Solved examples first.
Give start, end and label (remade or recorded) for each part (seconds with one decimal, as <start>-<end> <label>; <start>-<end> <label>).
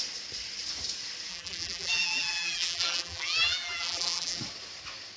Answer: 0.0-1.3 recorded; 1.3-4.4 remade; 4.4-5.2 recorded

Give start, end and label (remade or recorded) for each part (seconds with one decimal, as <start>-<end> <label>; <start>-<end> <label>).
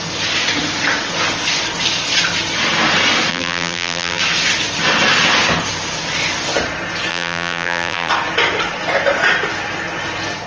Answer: 0.0-3.3 recorded; 3.3-4.2 remade; 4.2-7.1 recorded; 7.1-8.1 remade; 8.1-10.5 recorded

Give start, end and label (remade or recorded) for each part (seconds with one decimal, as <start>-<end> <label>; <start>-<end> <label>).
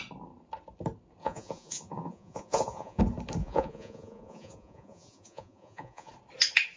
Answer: 0.0-1.2 recorded; 1.2-3.0 remade; 3.0-3.4 recorded; 3.4-6.1 remade; 6.1-6.8 recorded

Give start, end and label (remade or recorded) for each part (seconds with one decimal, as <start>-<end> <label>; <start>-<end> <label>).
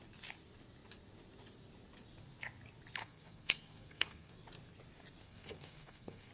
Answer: 0.0-3.0 recorded; 3.0-4.3 remade; 4.3-5.2 recorded; 5.2-6.3 remade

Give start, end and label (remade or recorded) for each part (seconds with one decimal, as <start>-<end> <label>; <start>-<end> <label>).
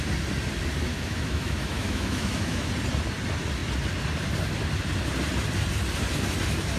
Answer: 0.0-0.9 recorded; 0.9-2.7 remade; 2.7-6.8 recorded